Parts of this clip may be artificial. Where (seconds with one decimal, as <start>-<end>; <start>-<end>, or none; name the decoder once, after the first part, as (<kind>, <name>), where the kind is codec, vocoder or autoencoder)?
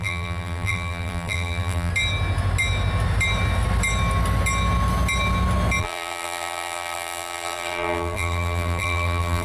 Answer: 0.0-1.9 (vocoder, BigVGAN v2); 5.8-9.4